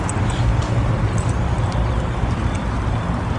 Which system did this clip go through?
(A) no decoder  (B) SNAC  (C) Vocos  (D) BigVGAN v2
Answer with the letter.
A